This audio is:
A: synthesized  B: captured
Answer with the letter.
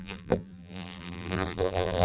A